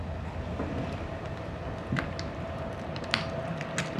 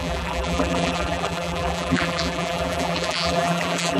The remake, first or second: second